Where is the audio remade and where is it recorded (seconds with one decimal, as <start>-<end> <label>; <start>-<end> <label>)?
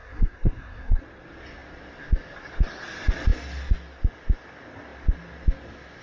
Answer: 0.0-1.0 remade; 1.0-6.0 recorded